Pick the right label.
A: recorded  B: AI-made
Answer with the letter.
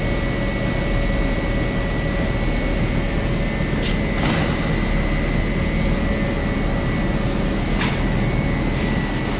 A